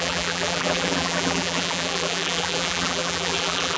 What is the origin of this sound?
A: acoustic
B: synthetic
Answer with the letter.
B